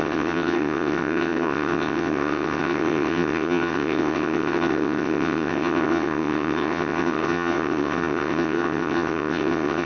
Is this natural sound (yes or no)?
no